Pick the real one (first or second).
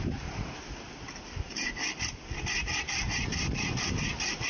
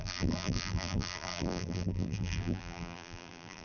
first